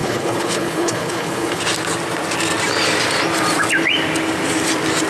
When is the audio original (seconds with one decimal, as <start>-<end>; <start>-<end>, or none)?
1.6-5.1